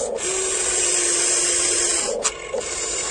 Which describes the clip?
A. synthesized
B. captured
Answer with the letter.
B